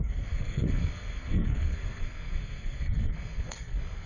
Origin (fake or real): fake